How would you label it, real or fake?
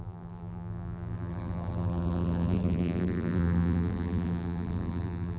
fake